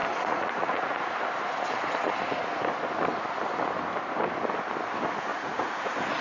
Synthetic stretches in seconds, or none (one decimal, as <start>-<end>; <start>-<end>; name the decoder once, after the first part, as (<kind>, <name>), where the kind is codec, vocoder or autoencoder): 0.0-1.2 (vocoder, Vocos); 5.3-6.2